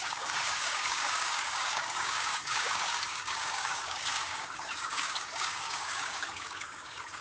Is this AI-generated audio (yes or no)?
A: yes